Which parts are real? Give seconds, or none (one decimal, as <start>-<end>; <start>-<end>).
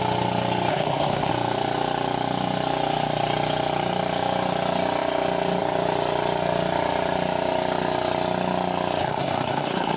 0.0-0.7; 1.3-9.0